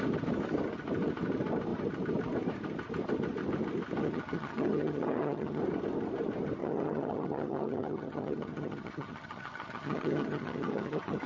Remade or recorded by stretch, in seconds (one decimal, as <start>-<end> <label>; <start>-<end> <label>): 0.0-4.0 recorded; 4.0-5.6 remade; 5.6-6.6 recorded; 6.6-11.3 remade